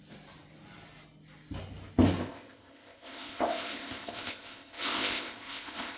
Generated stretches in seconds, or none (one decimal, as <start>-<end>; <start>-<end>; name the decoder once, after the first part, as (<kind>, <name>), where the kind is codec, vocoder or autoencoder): 2.2-6.0 (codec, ZipCodec)